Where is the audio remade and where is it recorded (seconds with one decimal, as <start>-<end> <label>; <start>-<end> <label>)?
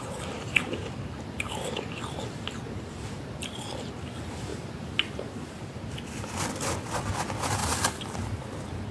0.0-7.6 recorded; 7.6-8.9 remade